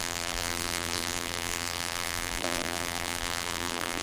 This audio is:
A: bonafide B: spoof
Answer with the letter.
B